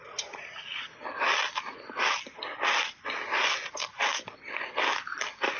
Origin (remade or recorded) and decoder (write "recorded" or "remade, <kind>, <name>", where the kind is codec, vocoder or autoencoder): recorded